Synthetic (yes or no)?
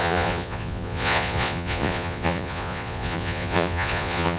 yes